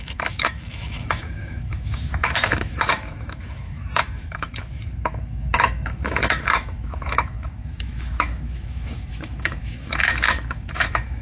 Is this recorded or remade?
remade